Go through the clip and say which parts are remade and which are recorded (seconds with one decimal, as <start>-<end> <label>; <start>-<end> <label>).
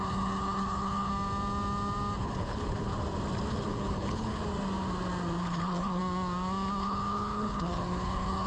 0.0-1.1 remade; 1.1-2.2 recorded; 2.2-2.9 remade; 2.9-3.5 recorded; 3.5-4.4 remade; 4.4-5.4 recorded; 5.4-6.0 remade; 6.0-6.8 recorded; 6.8-8.5 remade